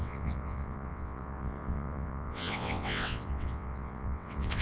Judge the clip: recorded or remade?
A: remade